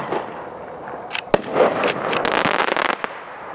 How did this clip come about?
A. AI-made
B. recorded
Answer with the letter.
B